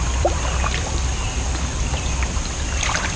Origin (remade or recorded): remade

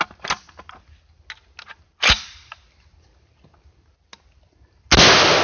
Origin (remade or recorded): recorded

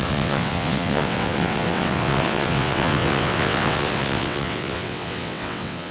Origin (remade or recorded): remade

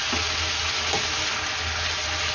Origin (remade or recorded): recorded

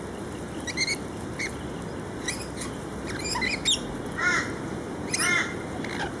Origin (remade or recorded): recorded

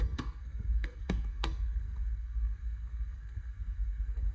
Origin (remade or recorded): remade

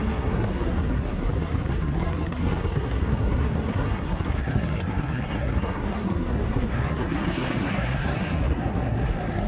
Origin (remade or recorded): remade